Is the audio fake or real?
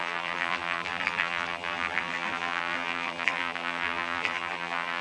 fake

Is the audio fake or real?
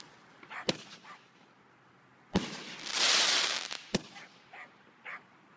real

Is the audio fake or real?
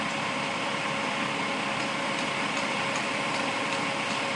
fake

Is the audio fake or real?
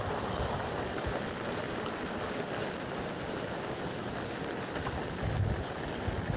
real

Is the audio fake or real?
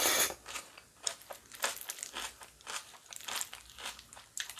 real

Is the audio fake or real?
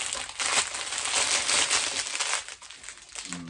real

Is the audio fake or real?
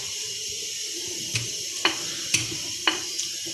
fake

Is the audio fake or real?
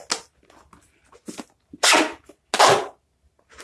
real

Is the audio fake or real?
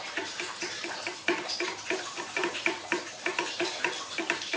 fake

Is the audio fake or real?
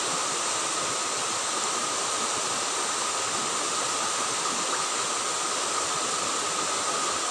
real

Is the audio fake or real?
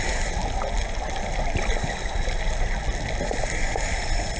real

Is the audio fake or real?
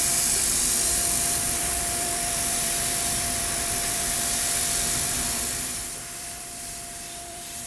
fake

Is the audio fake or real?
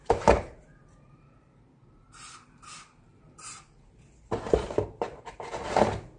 fake